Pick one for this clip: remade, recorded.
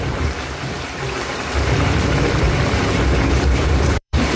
remade